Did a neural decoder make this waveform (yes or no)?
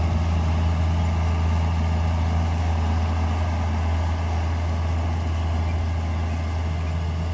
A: no